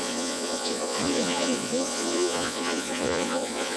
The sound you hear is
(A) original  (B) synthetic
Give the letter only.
B